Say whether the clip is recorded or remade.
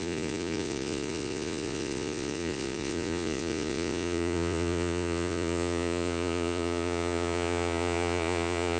remade